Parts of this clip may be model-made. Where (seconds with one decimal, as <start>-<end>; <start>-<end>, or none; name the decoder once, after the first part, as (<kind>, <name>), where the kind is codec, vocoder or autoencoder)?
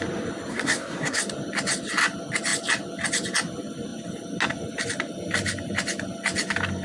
0.5-1.2 (codec, SNAC)